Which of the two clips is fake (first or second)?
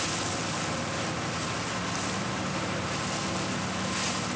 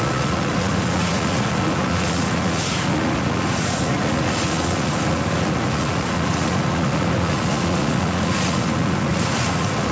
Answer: second